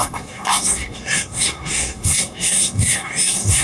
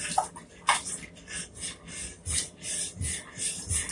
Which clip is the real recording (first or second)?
second